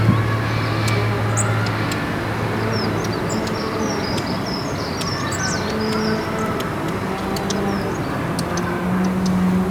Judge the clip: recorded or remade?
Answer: recorded